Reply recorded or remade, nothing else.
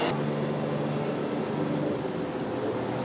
recorded